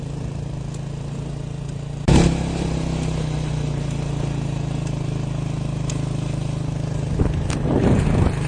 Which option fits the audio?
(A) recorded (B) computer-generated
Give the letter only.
A